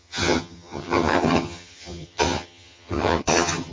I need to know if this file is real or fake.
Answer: fake